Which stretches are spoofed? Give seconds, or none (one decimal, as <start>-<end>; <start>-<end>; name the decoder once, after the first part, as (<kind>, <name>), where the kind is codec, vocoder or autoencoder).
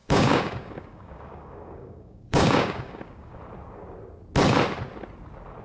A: 0.0-3.4 (codec, DAC)